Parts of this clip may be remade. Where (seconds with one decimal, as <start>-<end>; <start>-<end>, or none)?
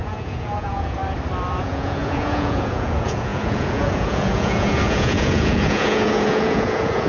0.0-1.0; 1.6-7.1